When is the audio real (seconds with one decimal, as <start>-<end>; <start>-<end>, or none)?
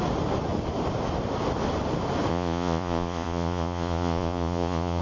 0.0-2.3